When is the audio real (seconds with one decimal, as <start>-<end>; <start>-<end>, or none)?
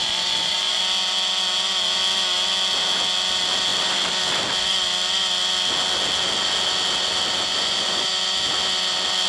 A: 0.8-7.5; 8.1-9.3